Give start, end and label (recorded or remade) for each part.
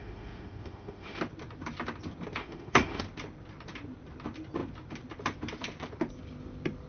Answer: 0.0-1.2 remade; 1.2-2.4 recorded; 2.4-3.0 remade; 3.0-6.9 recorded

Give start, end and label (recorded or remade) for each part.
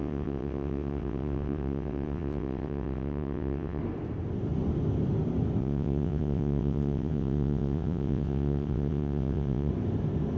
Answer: 0.0-3.8 remade; 3.8-5.6 recorded; 5.6-9.7 remade; 9.7-10.4 recorded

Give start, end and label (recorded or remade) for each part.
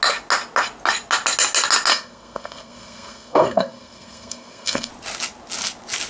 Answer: 0.0-1.9 recorded; 1.9-4.9 remade; 4.9-6.1 recorded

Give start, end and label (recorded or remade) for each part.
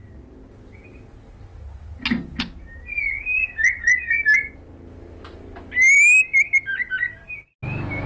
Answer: 0.0-8.1 recorded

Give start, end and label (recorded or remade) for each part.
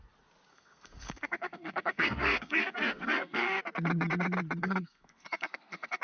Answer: 0.0-0.5 recorded; 0.5-3.6 remade; 3.6-4.6 recorded; 4.6-6.0 remade